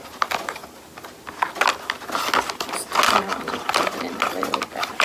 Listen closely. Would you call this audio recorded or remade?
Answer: recorded